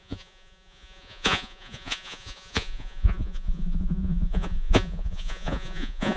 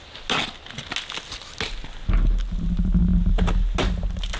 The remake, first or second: first